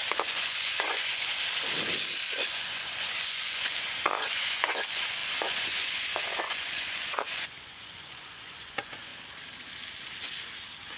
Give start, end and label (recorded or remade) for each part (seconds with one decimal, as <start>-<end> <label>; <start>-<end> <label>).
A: 0.0-1.3 remade; 1.3-2.3 recorded; 2.3-9.1 remade; 9.1-11.0 recorded